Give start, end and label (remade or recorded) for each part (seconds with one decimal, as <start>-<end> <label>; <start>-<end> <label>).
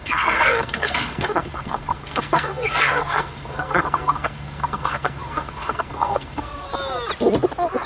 0.0-6.7 remade; 6.7-7.9 recorded